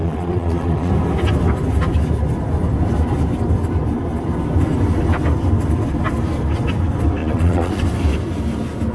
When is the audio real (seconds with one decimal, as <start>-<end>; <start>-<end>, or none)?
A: 0.9-7.2; 7.8-8.9